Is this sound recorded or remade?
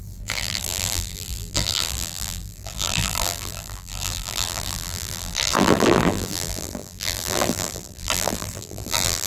remade